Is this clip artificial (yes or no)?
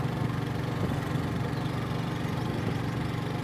no